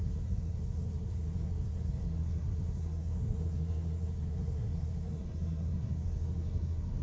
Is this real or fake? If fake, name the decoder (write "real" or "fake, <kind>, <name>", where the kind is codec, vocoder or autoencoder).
fake, codec, SNAC